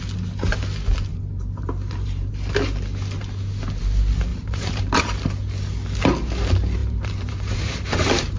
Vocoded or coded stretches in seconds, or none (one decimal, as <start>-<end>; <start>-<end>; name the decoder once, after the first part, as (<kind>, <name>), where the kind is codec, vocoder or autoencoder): 1.1-2.3 (vocoder, BigVGAN v2); 4.3-5.1; 6.8-8.4